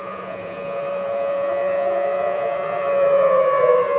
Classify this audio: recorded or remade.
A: remade